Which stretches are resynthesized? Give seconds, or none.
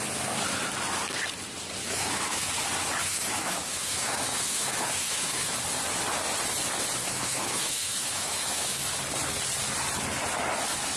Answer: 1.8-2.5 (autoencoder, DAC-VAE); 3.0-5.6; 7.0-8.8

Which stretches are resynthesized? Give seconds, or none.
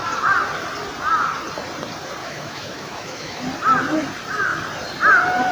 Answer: 2.2-3.4 (autoencoder, DAC-VAE)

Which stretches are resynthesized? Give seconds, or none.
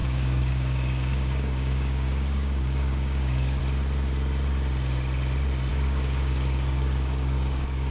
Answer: 0.0-3.6 (codec, DAC); 5.7-7.9